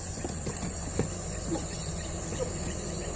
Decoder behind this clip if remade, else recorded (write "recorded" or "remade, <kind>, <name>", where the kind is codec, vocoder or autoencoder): remade, vocoder, Vocos